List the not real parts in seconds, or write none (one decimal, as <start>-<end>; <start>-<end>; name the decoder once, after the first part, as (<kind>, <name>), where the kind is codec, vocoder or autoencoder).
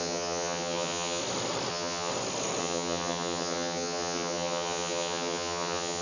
0.0-1.2 (vocoder, HiFi-GAN); 1.7-2.1; 2.6-6.0